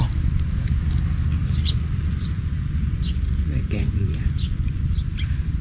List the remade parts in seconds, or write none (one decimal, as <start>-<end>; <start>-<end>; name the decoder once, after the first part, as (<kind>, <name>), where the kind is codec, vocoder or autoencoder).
1.4-4.8 (vocoder, Vocos)